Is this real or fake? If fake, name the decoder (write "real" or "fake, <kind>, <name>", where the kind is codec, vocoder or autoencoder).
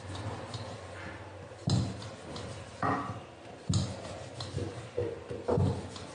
real